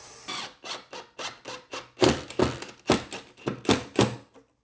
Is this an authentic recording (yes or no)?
yes